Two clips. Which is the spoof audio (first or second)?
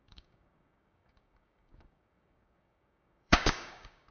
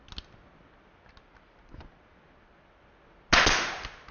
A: first